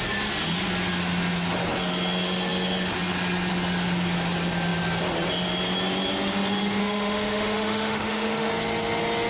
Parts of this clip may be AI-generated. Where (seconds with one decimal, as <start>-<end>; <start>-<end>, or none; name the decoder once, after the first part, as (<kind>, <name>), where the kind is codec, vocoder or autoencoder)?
6.8-8.5 (autoencoder, DAC-VAE)